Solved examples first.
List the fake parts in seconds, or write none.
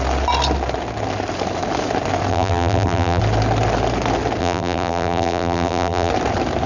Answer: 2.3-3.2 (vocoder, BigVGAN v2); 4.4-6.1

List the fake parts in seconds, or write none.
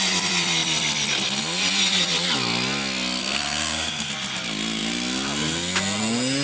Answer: 3.2-4.1 (codec, SNAC)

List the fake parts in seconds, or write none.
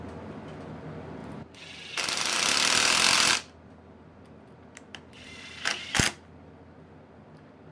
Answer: 1.2-3.3 (vocoder, BigVGAN v2)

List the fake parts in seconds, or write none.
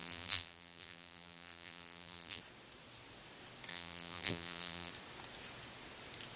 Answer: 0.0-2.4 (vocoder, BigVGAN v2); 3.7-4.9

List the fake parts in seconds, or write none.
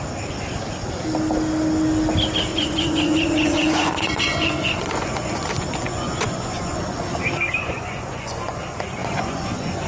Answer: 2.5-6.8 (vocoder, Vocos); 7.6-8.6; 9.0-9.9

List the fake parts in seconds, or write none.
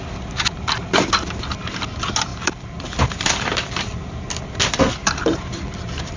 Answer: 2.3-3.9 (vocoder, BigVGAN v2); 5.0-6.2